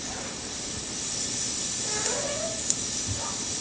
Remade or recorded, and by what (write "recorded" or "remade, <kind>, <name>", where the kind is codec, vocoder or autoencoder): recorded